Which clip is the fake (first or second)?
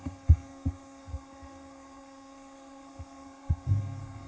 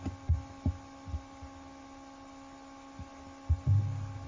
first